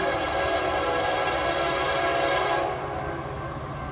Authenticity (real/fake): real